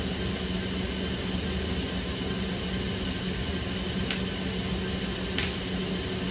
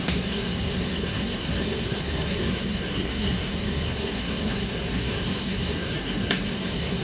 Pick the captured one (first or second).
first